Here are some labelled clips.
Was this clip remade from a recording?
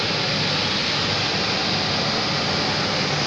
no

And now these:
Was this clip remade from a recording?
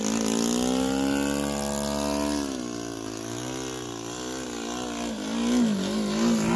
no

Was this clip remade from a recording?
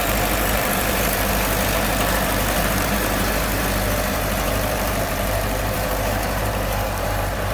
yes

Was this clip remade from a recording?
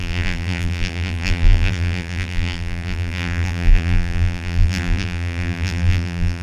yes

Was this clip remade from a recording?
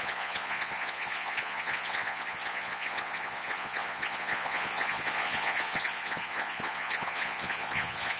yes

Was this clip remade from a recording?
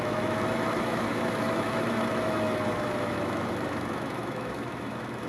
yes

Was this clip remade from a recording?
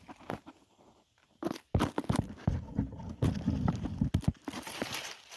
no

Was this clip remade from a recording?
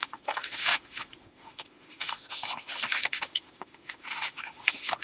yes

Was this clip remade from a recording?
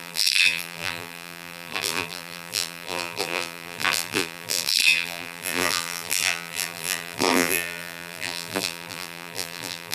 yes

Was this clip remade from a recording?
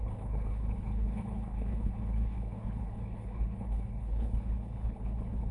yes